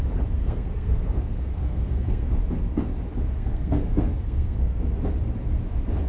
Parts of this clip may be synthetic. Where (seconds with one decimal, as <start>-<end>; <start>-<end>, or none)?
0.4-2.3; 3.3-4.8